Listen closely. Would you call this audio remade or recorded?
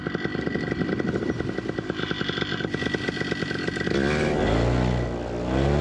recorded